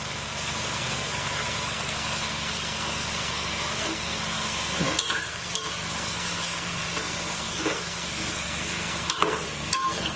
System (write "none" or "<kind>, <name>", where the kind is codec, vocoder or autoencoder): codec, SNAC